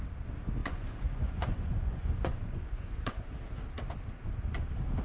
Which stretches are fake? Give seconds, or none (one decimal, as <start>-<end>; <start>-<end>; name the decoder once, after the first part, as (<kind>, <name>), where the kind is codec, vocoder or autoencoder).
0.6-3.2 (vocoder, Vocos)